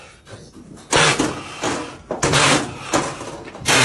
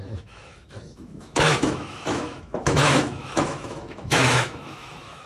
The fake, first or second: second